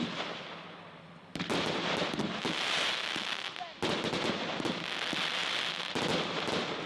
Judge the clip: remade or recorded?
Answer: recorded